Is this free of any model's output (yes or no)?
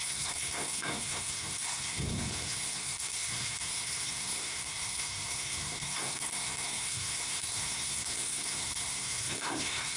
no